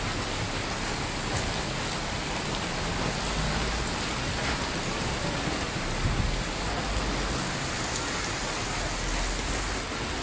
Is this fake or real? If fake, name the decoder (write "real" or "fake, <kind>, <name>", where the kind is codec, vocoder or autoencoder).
real